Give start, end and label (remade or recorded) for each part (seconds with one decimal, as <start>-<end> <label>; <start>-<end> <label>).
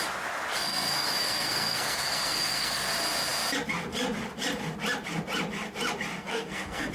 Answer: 0.0-0.5 recorded; 0.5-2.9 remade; 2.9-6.1 recorded; 6.1-6.9 remade